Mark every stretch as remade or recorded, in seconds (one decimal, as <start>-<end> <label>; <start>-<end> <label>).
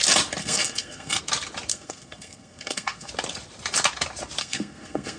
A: 0.0-0.4 recorded; 0.4-1.2 remade; 1.2-1.7 recorded; 1.7-3.1 remade; 3.1-4.4 recorded; 4.4-5.2 remade